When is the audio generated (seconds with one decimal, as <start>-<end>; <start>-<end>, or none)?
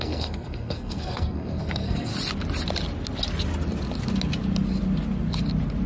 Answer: 0.0-2.1